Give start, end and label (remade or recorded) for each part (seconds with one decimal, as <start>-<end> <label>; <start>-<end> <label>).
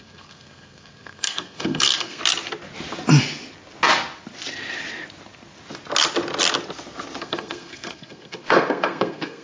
0.0-2.2 remade; 2.2-7.2 recorded; 7.2-9.4 remade